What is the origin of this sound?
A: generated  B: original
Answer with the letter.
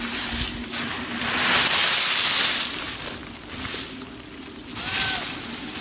B